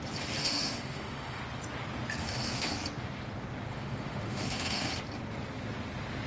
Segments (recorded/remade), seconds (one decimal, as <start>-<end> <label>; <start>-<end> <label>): 0.0-0.4 recorded; 0.4-1.4 remade; 1.4-2.2 recorded; 2.2-2.7 remade; 2.7-3.7 recorded; 3.7-4.9 remade; 4.9-6.3 recorded